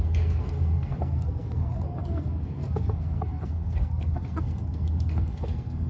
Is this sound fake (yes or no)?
yes